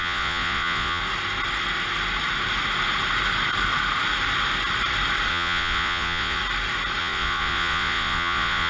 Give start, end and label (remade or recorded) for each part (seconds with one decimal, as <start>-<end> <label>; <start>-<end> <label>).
0.0-1.0 remade; 1.0-5.3 recorded; 5.3-6.4 remade; 6.4-7.0 recorded; 7.0-8.7 remade